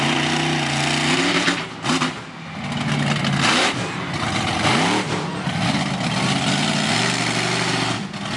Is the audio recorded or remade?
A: recorded